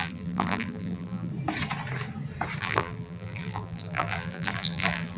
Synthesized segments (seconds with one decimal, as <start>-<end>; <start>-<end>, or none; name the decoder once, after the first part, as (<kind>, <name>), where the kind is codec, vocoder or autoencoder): 0.0-1.3 (vocoder, BigVGAN v2); 2.6-5.2